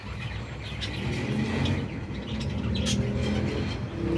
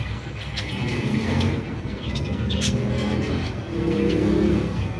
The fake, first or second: second